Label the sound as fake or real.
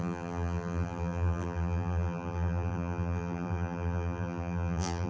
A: fake